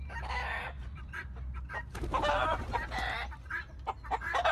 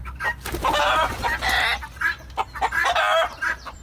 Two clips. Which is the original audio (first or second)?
second